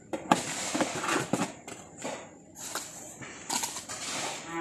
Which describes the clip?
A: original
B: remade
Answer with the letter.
A